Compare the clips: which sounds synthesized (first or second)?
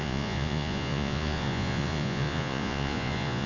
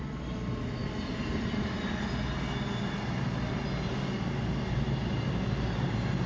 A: first